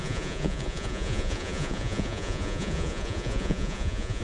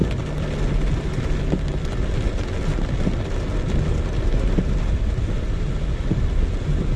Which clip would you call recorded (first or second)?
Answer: second